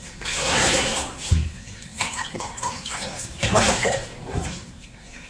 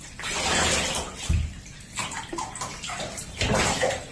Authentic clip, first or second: second